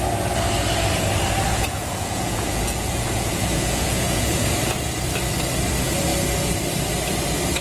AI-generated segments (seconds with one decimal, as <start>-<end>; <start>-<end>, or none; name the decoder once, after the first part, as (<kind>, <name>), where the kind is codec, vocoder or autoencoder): 1.5-4.4 (vocoder, Vocos)